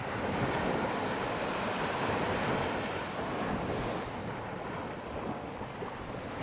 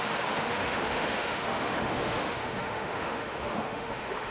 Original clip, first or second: first